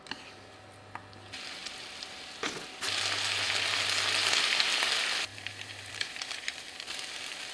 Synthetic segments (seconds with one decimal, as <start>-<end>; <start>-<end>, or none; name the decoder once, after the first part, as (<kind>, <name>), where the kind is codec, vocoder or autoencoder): 5.3-6.7 (vocoder, BigVGAN v2)